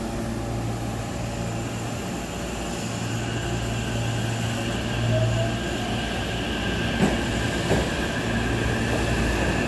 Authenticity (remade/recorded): recorded